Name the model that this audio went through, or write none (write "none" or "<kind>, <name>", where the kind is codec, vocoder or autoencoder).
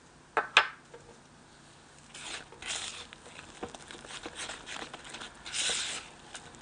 none